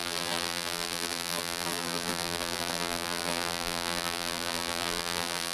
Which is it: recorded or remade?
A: remade